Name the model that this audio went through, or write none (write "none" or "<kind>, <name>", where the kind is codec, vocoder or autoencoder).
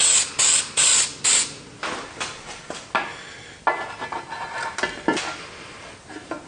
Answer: none